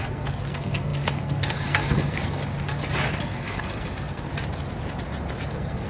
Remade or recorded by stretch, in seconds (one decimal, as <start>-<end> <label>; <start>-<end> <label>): 0.0-2.4 remade; 2.4-3.2 recorded; 3.2-4.3 remade; 4.3-5.5 recorded; 5.5-5.9 remade